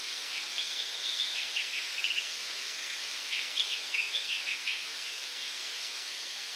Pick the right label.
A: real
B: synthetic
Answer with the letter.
B